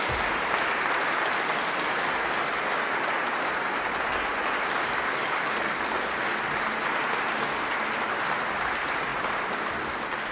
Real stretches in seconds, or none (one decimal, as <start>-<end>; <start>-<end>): 0.0-10.3